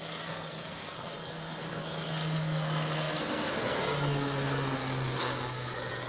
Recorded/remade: remade